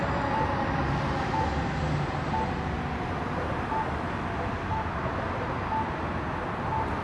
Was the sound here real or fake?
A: real